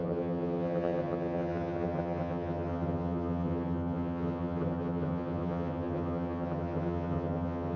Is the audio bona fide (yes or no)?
no